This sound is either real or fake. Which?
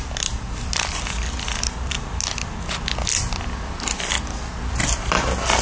real